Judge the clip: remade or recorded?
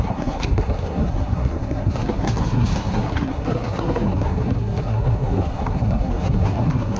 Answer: remade